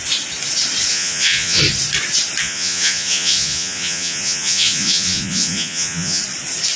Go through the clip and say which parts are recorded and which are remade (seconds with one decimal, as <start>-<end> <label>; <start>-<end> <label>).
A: 0.0-0.9 recorded; 0.9-1.6 remade; 1.6-2.4 recorded; 2.4-6.2 remade; 6.2-6.8 recorded